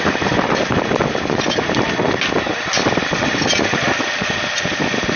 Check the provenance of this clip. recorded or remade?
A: recorded